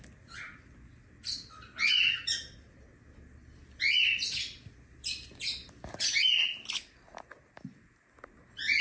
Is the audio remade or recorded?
recorded